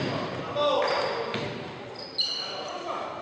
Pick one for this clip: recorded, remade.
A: recorded